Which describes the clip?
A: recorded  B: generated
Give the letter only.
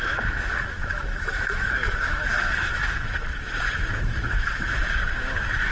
B